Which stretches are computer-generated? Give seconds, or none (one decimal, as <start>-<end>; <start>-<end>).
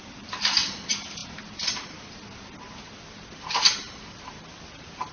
none